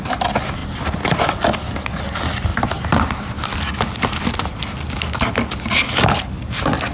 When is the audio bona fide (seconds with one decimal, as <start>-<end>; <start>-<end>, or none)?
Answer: 0.0-6.9